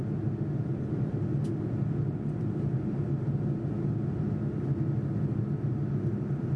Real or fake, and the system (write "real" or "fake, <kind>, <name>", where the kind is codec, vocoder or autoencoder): real